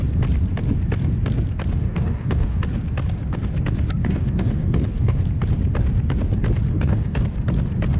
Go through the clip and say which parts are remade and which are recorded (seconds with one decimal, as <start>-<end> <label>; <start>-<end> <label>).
0.0-1.8 recorded; 1.8-2.6 remade; 2.6-4.0 recorded; 4.0-5.2 remade; 5.2-6.7 recorded; 6.7-7.2 remade; 7.2-8.0 recorded

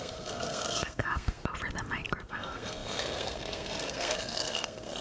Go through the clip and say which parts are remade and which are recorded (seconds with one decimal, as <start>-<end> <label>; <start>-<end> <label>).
0.0-1.4 remade; 1.4-2.3 recorded; 2.3-5.0 remade

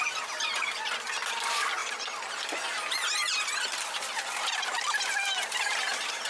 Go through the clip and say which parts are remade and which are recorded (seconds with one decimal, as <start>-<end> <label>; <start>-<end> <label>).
0.0-6.3 recorded

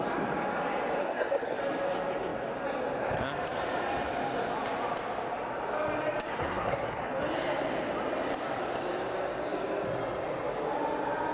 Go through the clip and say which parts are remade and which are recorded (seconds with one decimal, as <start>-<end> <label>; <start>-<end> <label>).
0.0-1.0 recorded; 1.0-1.6 remade; 1.6-6.3 recorded; 6.3-7.1 remade; 7.1-11.3 recorded

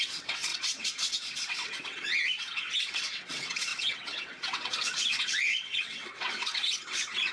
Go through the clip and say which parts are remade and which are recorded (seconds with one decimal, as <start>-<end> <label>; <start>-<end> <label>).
0.0-7.3 remade